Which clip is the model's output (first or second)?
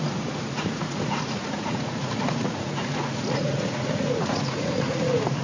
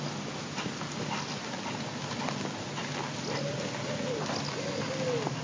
first